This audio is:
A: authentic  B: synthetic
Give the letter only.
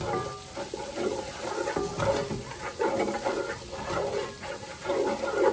A